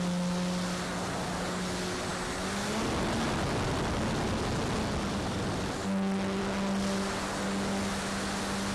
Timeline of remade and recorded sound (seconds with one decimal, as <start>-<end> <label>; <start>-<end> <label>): 0.0-8.7 recorded